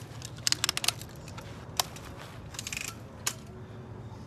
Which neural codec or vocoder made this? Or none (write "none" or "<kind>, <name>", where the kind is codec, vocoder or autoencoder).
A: none